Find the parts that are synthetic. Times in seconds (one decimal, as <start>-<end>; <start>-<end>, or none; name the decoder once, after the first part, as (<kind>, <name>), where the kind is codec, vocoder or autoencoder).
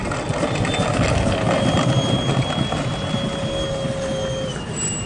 none